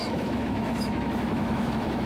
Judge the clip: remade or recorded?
remade